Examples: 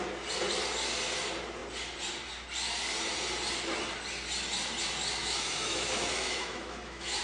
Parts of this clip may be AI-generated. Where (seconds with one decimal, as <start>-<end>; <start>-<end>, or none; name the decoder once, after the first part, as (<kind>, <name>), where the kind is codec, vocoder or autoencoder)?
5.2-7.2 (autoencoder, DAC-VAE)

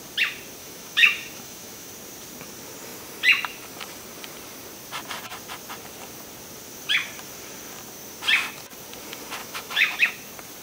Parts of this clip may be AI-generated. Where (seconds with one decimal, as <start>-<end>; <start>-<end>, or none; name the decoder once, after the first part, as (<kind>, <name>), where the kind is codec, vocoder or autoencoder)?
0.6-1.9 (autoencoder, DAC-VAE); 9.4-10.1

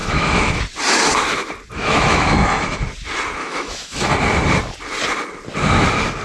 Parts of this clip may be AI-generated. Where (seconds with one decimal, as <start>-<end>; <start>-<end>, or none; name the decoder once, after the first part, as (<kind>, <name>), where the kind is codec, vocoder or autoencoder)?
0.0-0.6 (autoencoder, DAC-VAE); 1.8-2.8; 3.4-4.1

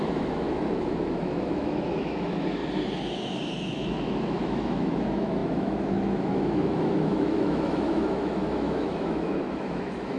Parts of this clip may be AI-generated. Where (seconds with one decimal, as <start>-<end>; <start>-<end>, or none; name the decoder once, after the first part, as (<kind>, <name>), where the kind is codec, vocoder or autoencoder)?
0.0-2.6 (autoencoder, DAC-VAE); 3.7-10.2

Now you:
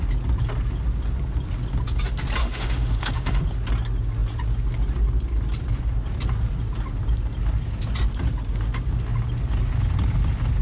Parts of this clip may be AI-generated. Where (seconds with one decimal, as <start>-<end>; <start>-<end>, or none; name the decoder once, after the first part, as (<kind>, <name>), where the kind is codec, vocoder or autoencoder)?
2.4-3.4 (autoencoder, DAC-VAE)

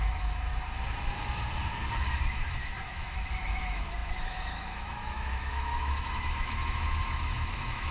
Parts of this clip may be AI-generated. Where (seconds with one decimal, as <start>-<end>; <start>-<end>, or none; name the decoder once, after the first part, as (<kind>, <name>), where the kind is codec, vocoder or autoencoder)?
0.0-0.5 (autoencoder, DAC-VAE); 2.3-7.9